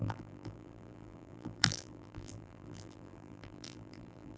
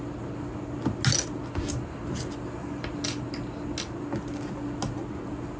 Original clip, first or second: second